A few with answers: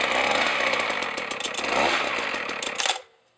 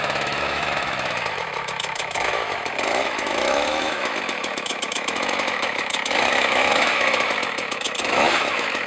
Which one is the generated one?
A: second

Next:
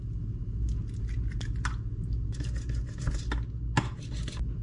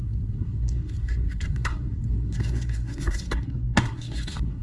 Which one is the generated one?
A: second